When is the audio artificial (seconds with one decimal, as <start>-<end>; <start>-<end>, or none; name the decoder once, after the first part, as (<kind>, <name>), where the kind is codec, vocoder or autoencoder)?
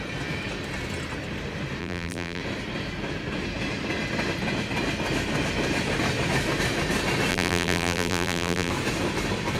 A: 1.8-2.4 (vocoder, BigVGAN v2); 7.3-8.7